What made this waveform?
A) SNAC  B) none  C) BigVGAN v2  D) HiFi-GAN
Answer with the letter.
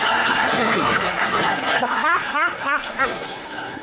A